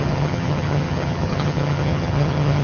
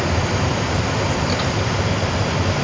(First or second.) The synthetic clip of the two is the first